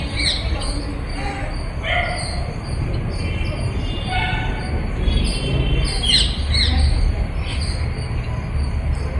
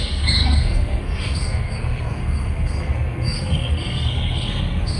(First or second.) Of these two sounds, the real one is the first